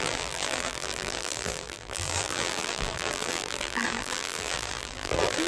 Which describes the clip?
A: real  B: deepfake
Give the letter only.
B